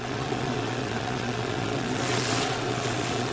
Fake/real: fake